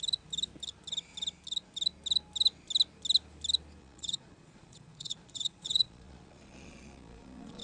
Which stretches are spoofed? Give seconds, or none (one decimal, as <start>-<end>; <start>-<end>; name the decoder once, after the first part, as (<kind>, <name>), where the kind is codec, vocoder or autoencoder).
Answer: 3.8-7.6 (vocoder, Vocos)